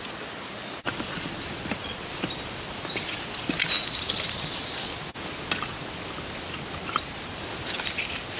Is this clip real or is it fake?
real